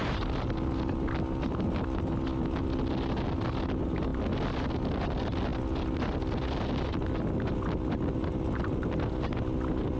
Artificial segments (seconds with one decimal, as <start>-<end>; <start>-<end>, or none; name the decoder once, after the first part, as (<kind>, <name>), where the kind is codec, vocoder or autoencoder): none